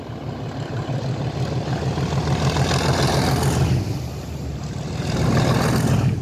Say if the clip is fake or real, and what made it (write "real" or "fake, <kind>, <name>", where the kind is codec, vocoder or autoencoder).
real